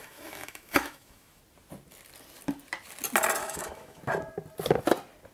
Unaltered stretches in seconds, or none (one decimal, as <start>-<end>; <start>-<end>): 1.4-3.4; 4.0-5.3